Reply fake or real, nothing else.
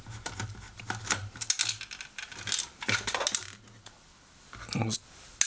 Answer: real